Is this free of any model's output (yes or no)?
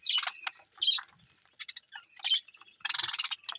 yes